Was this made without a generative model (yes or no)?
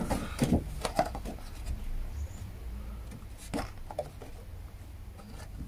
yes